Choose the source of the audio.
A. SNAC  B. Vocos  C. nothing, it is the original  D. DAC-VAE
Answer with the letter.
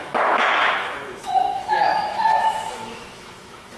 D